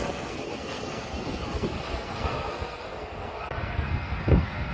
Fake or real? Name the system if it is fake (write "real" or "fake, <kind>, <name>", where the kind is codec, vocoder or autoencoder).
fake, codec, SNAC